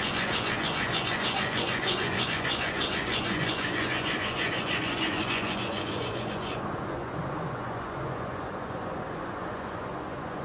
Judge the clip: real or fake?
fake